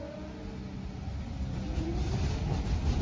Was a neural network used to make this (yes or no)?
no